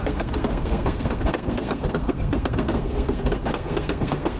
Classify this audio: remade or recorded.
remade